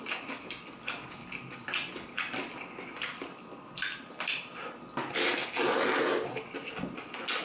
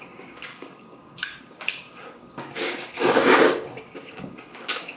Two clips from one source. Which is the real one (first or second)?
first